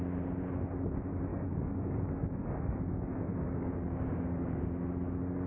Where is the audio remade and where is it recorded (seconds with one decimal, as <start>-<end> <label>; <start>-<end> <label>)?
0.0-1.3 recorded; 1.3-4.6 remade; 4.6-5.5 recorded